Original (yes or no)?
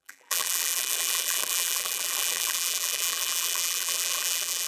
no